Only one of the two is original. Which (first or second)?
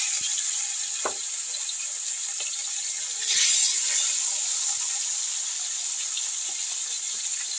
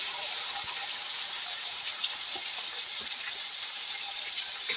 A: first